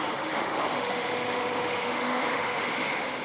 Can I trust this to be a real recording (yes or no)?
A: no